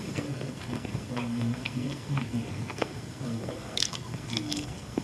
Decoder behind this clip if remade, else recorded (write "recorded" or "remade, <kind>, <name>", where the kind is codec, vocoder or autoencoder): remade, codec, SNAC